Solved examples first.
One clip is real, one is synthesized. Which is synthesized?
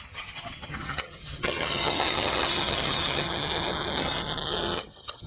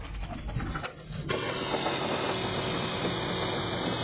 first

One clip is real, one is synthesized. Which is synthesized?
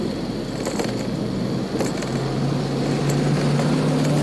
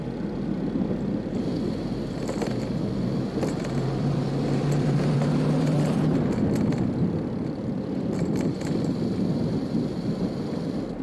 second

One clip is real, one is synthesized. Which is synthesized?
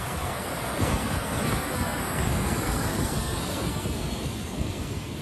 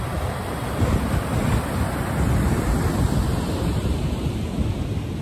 first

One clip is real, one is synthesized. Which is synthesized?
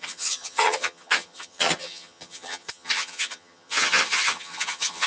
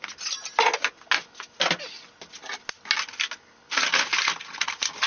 first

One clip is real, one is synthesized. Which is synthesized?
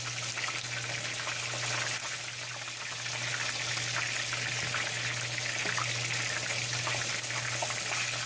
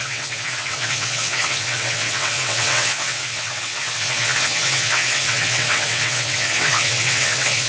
second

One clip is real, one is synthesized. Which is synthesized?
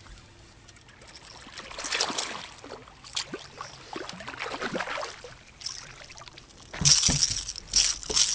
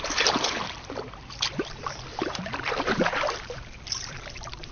second